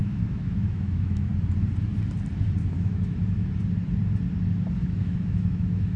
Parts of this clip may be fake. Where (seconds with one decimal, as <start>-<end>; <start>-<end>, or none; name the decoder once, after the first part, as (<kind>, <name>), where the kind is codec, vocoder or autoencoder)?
0.0-1.3 (autoencoder, DAC-VAE); 2.6-3.5; 4.8-6.0